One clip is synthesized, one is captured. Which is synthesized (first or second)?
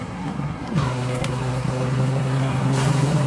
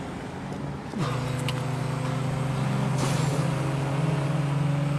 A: first